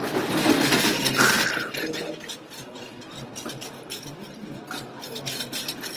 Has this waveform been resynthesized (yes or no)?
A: no